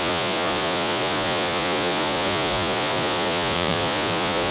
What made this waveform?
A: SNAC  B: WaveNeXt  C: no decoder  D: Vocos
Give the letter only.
D